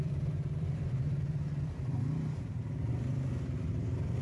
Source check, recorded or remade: remade